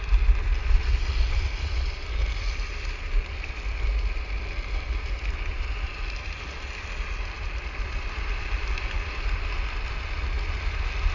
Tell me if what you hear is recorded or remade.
recorded